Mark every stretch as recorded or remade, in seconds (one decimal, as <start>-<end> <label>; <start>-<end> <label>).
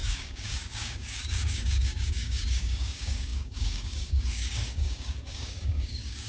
0.0-6.3 remade